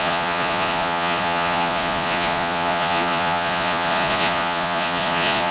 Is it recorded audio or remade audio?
remade